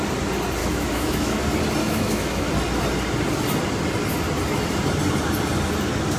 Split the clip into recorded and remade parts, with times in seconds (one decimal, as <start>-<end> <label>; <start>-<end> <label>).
0.0-0.6 recorded; 0.6-1.4 remade; 1.4-1.8 recorded; 1.8-2.5 remade; 2.5-6.2 recorded